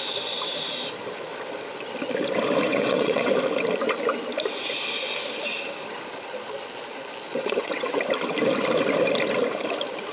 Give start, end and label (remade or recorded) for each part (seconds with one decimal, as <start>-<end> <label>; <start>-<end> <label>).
0.0-2.7 recorded; 2.7-3.3 remade; 3.3-7.3 recorded; 7.3-8.0 remade; 8.0-10.1 recorded